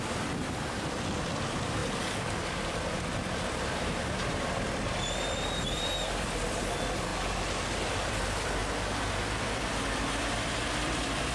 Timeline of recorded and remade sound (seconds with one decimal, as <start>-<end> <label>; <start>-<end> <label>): 0.0-7.1 remade; 7.1-7.9 recorded; 7.9-8.6 remade; 8.6-9.1 recorded; 9.1-11.3 remade